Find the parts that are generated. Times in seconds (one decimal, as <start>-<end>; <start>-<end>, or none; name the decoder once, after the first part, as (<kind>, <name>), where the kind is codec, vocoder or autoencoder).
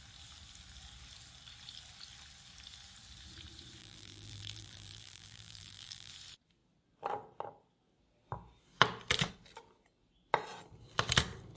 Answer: 3.8-6.1 (vocoder, BigVGAN v2)